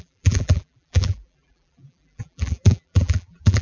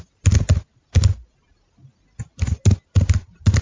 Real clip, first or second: second